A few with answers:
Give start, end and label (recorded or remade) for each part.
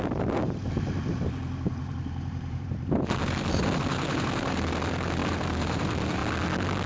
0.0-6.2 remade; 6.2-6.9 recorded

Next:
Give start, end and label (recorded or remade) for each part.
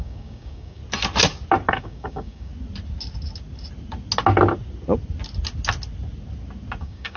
0.0-0.8 remade; 0.8-1.7 recorded; 1.7-2.5 remade; 2.5-6.8 recorded; 6.8-7.2 remade